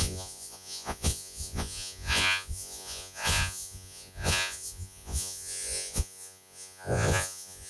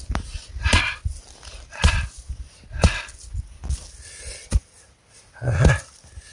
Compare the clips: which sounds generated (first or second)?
first